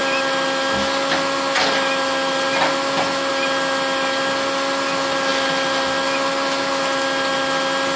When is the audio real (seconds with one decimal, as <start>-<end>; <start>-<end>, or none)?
0.0-5.3; 6.7-8.0